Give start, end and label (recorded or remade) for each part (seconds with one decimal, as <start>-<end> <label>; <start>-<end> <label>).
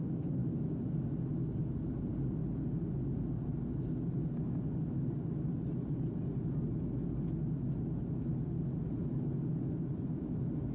0.0-10.7 recorded